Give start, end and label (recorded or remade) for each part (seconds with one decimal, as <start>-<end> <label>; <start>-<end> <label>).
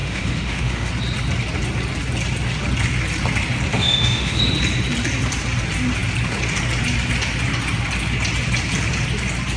0.0-0.9 remade; 0.9-3.7 recorded; 3.7-4.4 remade; 4.4-9.6 recorded